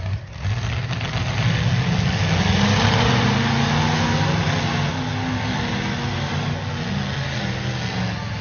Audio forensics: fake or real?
real